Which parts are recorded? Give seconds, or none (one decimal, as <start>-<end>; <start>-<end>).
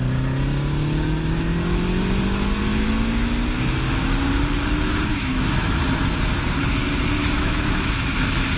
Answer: 0.0-5.1; 5.8-7.2; 8.1-8.6